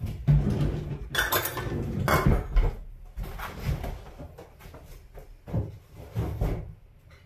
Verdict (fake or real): real